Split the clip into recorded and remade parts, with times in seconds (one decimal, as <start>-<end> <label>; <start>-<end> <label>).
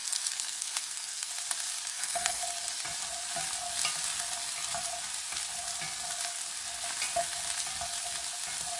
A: 0.0-1.3 remade; 1.3-1.9 recorded; 1.9-2.4 remade; 2.4-8.8 recorded